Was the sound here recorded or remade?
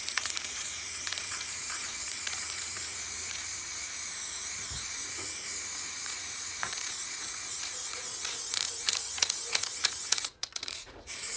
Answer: remade